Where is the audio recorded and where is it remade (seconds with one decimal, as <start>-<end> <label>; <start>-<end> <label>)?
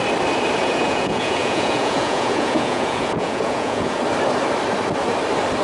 0.0-0.6 recorded; 0.6-4.0 remade; 4.0-5.6 recorded